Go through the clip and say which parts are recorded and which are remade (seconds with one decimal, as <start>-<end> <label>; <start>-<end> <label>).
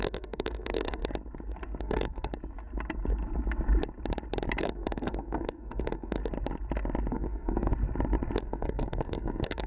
0.0-1.0 remade; 1.0-1.8 recorded; 1.8-2.3 remade; 2.3-4.6 recorded; 4.6-6.2 remade; 6.2-7.1 recorded; 7.1-7.7 remade; 7.7-8.4 recorded; 8.4-9.7 remade